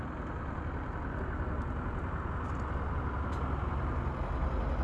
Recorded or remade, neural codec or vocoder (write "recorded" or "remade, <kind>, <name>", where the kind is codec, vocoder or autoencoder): recorded